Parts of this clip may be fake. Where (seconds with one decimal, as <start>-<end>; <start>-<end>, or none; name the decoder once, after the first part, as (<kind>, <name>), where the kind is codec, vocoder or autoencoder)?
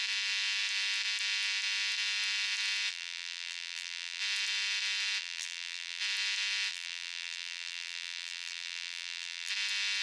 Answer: 2.9-4.2 (vocoder, BigVGAN v2); 5.2-6.0; 6.7-9.5